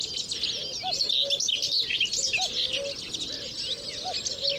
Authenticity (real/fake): real